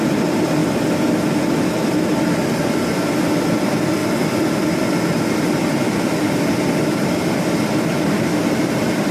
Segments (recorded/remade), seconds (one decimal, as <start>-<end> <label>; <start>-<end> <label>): 0.0-0.6 remade; 0.6-2.9 recorded; 2.9-9.1 remade